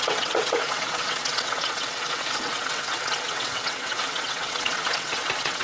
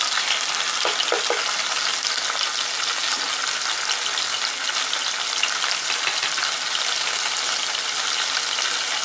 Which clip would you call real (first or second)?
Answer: second